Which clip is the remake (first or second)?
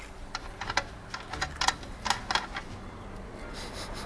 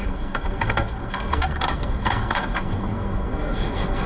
second